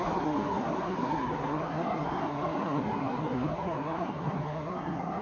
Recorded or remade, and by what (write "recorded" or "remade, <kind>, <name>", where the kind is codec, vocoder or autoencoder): remade, codec, SNAC